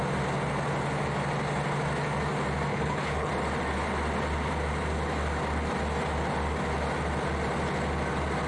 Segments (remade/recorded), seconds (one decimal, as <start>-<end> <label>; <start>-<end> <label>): 0.0-2.7 recorded; 2.7-3.3 remade; 3.3-8.5 recorded